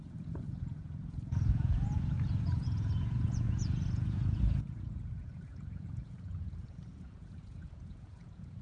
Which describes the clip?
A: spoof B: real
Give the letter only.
A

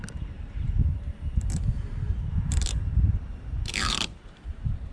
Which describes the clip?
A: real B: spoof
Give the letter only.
B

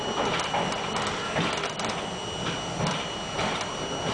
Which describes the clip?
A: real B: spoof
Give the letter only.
A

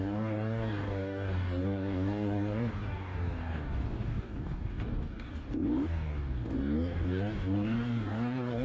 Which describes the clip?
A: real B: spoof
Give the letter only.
B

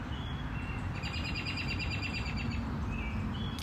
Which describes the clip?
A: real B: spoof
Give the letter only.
A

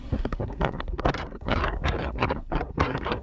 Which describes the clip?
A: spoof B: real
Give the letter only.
A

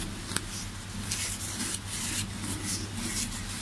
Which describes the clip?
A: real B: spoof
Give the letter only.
A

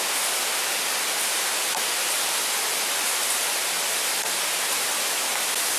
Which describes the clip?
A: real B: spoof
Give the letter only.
A